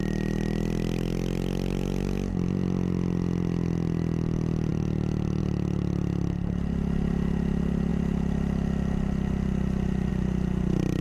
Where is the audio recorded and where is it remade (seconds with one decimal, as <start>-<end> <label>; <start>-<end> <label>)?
0.0-11.0 recorded